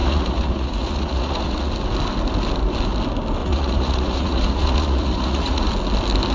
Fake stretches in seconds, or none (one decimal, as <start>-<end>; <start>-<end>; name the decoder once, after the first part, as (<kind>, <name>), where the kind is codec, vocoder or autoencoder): 0.0-1.7 (vocoder, Vocos); 3.4-5.7